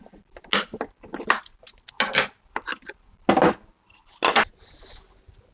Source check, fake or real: real